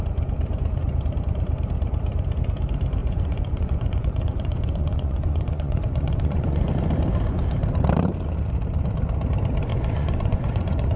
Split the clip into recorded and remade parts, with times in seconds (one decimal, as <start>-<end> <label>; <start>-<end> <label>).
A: 0.0-3.0 recorded; 3.0-6.7 remade; 6.7-9.7 recorded; 9.7-11.0 remade